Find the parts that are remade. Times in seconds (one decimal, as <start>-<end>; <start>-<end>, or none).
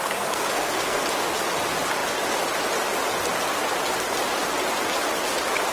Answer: 0.0-1.0